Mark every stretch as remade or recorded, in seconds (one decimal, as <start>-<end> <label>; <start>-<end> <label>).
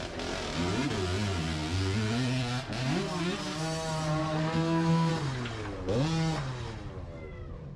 0.0-4.2 recorded; 4.2-5.1 remade; 5.1-7.8 recorded